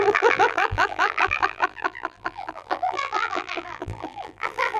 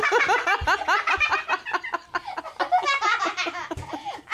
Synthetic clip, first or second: first